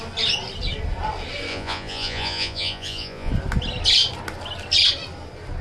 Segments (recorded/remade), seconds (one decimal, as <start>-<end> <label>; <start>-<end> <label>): 0.0-1.5 recorded; 1.5-3.3 remade; 3.3-5.6 recorded